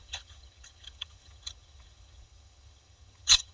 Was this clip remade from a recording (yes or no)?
yes